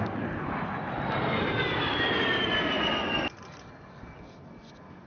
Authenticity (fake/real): real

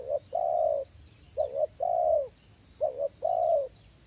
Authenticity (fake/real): real